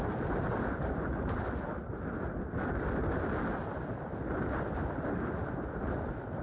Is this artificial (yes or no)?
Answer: no